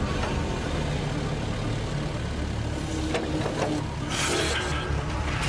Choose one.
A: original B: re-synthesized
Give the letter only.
A